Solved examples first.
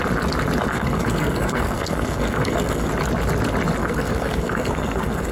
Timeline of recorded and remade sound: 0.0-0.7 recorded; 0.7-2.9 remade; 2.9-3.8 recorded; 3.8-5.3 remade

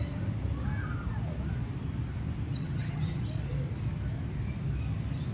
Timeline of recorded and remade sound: 0.0-2.6 recorded; 2.6-3.2 remade; 3.2-5.3 recorded

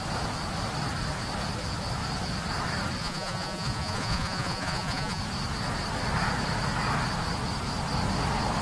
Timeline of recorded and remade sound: 0.0-3.0 recorded; 3.0-5.2 remade; 5.2-8.6 recorded